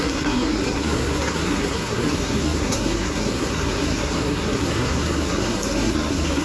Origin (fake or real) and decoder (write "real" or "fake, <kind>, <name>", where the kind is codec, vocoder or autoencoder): fake, codec, SNAC